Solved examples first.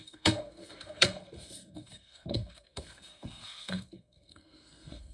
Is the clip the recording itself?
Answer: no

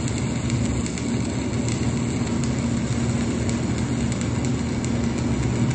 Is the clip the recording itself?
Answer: yes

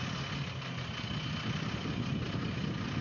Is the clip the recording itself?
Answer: yes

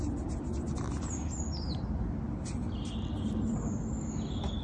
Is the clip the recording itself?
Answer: yes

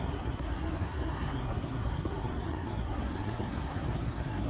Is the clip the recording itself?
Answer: no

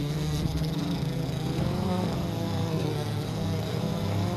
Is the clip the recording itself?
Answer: no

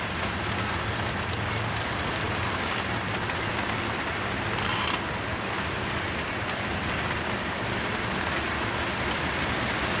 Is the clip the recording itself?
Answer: yes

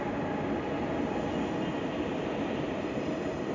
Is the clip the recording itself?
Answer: yes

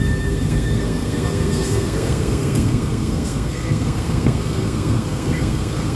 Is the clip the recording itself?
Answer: no